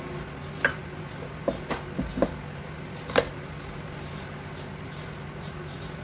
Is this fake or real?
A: real